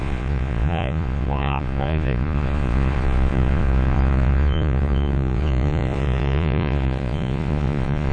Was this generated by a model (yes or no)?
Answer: yes